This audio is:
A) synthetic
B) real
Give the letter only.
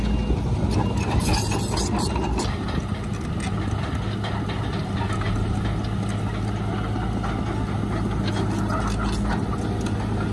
B